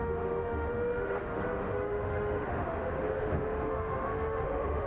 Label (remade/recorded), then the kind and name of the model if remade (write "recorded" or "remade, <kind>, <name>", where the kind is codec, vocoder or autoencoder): remade, autoencoder, DAC-VAE